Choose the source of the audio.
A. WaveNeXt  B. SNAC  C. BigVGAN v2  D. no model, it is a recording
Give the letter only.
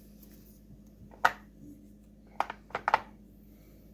D